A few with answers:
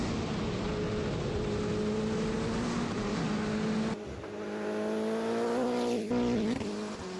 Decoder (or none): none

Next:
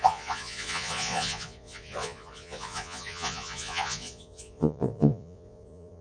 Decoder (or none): vocoder, Vocos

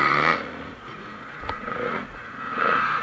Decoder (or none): vocoder, Vocos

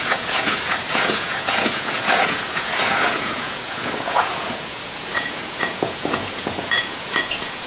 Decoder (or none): vocoder, Vocos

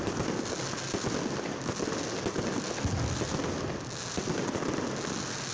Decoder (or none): none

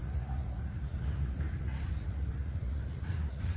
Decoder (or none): vocoder, Vocos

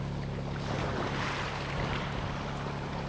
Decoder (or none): none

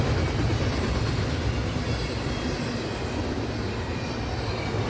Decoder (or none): none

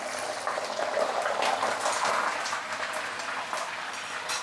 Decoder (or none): none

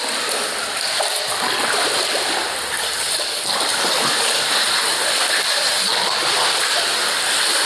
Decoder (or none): none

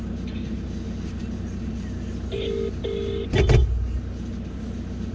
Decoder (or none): none